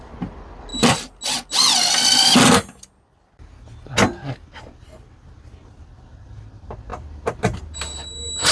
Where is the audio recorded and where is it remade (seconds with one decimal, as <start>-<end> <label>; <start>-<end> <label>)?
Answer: 0.0-8.5 recorded